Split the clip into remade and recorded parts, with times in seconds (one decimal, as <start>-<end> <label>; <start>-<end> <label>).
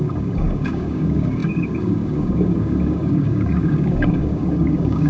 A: 0.0-5.1 remade